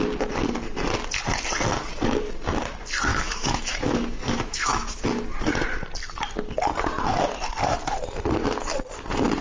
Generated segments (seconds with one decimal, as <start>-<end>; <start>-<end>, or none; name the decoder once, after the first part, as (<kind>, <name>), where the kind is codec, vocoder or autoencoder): 3.1-5.0 (autoencoder, DAC-VAE)

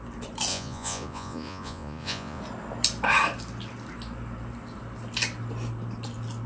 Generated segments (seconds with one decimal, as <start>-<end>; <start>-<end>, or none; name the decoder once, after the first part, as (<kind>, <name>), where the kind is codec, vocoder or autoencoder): 0.5-2.4 (vocoder, Vocos)

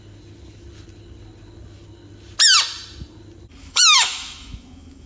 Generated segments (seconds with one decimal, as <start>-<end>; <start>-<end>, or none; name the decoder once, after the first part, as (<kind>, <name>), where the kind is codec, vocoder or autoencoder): 3.6-5.1 (autoencoder, DAC-VAE)

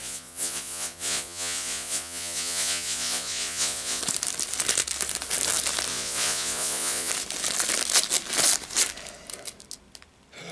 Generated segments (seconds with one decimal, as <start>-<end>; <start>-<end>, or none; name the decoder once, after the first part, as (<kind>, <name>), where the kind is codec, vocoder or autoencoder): 0.0-4.0 (vocoder, Vocos); 5.9-7.1

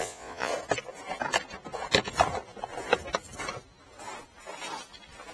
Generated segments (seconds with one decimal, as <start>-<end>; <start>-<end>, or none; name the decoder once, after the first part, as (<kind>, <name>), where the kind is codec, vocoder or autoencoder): 0.0-0.5 (vocoder, Vocos)